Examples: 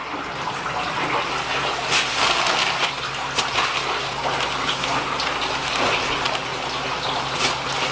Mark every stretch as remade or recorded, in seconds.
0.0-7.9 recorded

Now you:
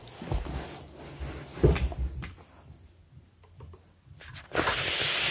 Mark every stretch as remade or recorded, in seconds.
0.0-5.3 recorded